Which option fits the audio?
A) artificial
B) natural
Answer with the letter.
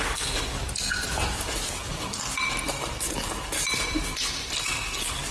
B